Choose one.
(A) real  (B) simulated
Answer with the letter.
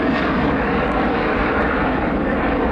B